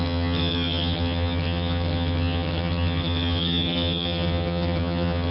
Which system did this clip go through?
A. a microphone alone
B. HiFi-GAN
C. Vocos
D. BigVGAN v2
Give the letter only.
B